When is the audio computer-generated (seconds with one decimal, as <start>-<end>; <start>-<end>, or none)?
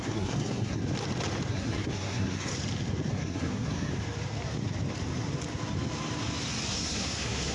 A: 0.0-0.8; 1.5-2.5; 3.1-3.9; 6.7-7.5